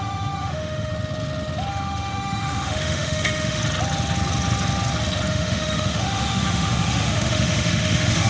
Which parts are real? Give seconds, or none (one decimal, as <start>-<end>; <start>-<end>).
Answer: 0.9-1.7; 3.6-5.3

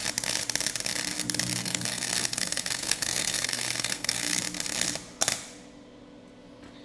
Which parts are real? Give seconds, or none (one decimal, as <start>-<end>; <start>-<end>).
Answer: 0.0-1.6; 4.4-6.8

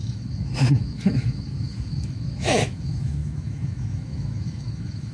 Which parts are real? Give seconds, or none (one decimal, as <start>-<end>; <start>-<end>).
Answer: none

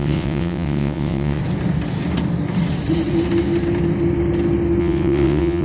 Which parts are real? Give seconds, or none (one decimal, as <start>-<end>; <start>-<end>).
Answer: 1.4-4.8

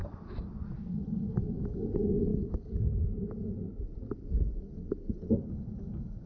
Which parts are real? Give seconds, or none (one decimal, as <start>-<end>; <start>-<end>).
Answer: 0.0-1.2; 2.3-5.5

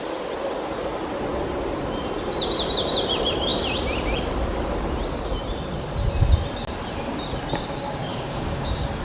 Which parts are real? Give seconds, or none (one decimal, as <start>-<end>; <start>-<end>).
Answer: 0.0-8.1

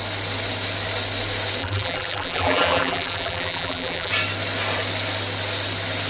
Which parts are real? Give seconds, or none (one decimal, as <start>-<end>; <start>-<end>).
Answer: 0.0-1.6; 4.1-6.1

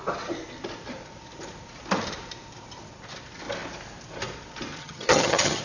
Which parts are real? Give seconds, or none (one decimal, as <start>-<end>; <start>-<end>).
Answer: 0.0-4.8